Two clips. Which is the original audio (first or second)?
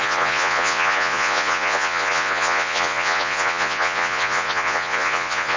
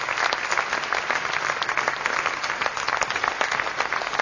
second